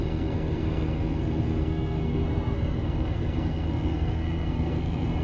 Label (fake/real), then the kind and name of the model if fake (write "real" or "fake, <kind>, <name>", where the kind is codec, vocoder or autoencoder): fake, codec, SNAC